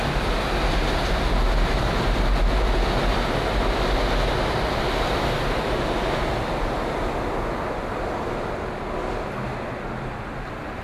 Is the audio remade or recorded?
recorded